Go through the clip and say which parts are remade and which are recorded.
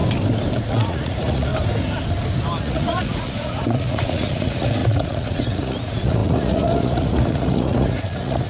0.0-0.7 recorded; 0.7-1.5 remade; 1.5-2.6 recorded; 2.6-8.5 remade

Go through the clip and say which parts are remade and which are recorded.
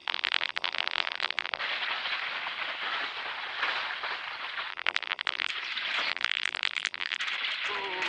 0.0-1.6 remade; 1.6-4.7 recorded; 4.7-5.5 remade; 5.5-6.1 recorded; 6.1-7.2 remade; 7.2-8.1 recorded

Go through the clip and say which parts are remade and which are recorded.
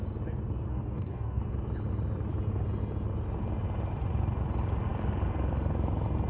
0.0-0.7 recorded; 0.7-1.4 remade; 1.4-6.3 recorded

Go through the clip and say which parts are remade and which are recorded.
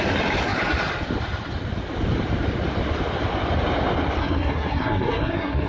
0.0-4.2 recorded; 4.2-5.7 remade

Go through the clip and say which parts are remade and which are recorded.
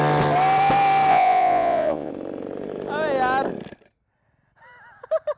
0.0-1.1 recorded; 1.1-2.1 remade; 2.1-5.4 recorded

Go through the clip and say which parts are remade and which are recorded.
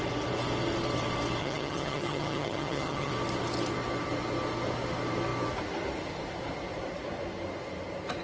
0.0-1.4 recorded; 1.4-3.1 remade; 3.1-8.2 recorded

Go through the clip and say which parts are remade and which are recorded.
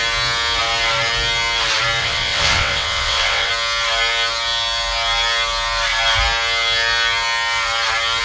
0.0-2.0 recorded; 2.0-3.5 remade; 3.5-8.2 recorded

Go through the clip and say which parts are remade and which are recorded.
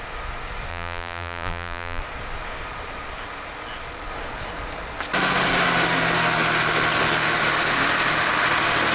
0.0-0.7 recorded; 0.7-2.0 remade; 2.0-8.9 recorded